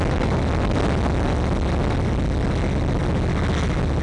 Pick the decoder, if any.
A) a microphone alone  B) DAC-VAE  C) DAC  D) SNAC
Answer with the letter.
A